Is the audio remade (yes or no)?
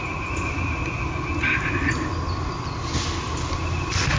no